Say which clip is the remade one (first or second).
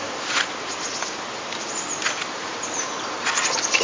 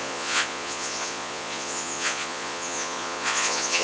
second